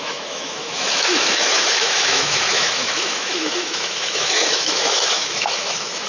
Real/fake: fake